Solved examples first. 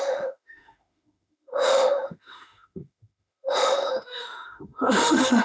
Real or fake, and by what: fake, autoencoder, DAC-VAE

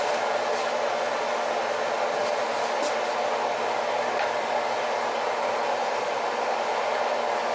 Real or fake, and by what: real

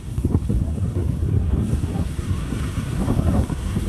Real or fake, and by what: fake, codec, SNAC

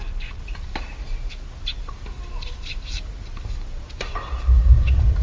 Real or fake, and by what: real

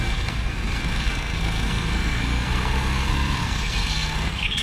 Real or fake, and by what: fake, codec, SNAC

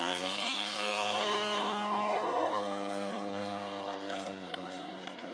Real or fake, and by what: fake, codec, SNAC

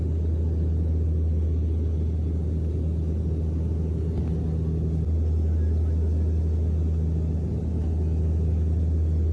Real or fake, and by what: real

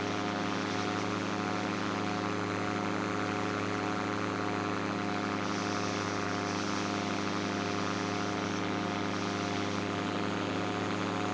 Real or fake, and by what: real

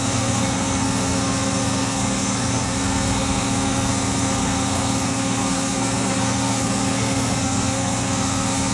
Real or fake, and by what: fake, codec, SNAC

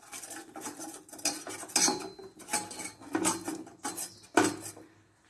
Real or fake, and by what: real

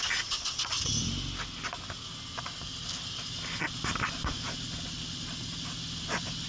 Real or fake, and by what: real